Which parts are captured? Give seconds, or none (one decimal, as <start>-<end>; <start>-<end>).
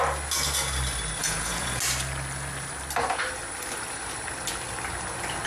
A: 0.0-1.2; 1.8-5.5